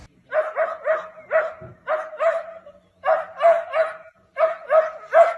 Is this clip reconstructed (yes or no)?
no